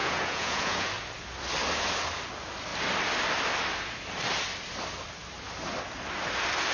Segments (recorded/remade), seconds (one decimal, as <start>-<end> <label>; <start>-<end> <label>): 0.0-0.9 remade; 0.9-6.7 recorded